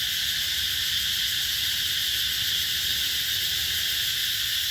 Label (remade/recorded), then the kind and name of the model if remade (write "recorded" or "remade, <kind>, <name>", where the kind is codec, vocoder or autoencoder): recorded